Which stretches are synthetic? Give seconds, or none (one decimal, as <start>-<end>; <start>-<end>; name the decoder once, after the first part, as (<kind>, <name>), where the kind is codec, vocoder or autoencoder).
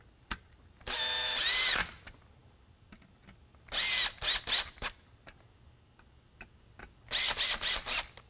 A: none